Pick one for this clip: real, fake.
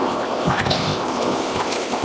fake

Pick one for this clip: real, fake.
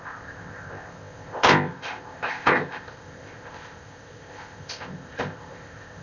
fake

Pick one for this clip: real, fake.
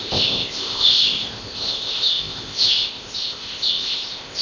fake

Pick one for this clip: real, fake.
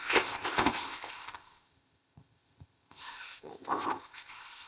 fake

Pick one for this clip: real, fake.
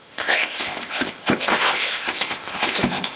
fake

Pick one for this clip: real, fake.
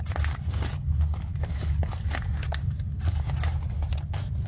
real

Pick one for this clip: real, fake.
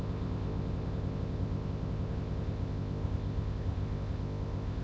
fake